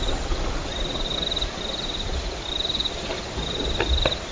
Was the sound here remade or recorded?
recorded